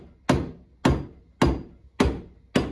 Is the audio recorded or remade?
recorded